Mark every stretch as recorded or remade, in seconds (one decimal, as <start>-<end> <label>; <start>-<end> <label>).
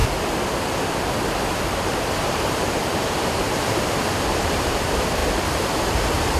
0.0-2.1 recorded; 2.1-6.4 remade